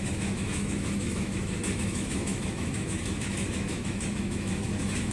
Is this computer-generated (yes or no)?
yes